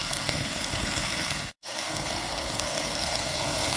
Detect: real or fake fake